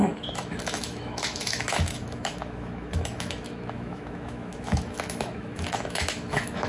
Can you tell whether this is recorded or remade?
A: remade